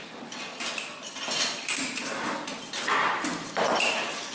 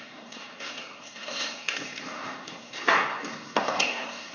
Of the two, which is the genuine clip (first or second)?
first